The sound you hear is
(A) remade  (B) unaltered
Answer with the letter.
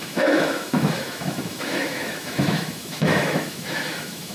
A